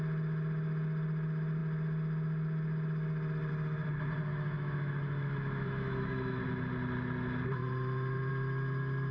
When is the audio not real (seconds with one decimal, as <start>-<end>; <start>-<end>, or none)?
4.3-6.4